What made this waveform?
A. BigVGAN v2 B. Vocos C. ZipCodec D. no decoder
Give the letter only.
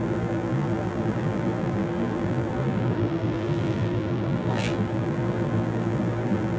A